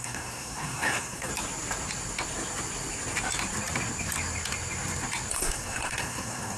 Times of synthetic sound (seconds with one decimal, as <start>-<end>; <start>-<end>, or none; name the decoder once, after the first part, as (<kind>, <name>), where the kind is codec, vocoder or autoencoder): 0.0-1.3 (codec, SNAC); 5.3-6.6